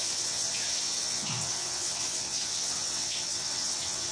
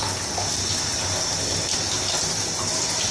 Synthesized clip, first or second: first